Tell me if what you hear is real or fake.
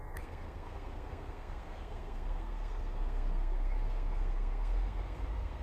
fake